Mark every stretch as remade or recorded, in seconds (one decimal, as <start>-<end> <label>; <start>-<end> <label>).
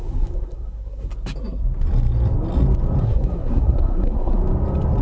0.0-1.1 remade; 1.1-3.0 recorded; 3.0-4.4 remade; 4.4-5.0 recorded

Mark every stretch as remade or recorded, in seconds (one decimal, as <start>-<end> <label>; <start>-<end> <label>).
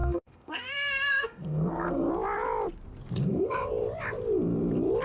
0.0-2.1 remade; 2.1-3.2 recorded; 3.2-3.7 remade; 3.7-5.0 recorded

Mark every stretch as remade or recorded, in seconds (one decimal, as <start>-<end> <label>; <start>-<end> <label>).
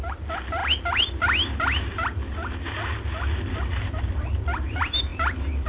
0.0-5.7 recorded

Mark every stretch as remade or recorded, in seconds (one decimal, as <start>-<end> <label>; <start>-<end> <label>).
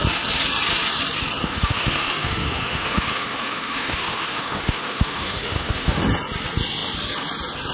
0.0-1.4 recorded; 1.4-6.0 remade; 6.0-7.7 recorded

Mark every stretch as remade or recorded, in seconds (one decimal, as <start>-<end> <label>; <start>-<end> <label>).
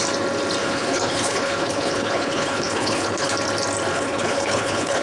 0.0-0.6 recorded; 0.6-3.3 remade; 3.3-3.9 recorded; 3.9-5.0 remade